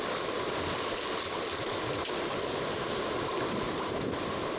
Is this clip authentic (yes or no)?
yes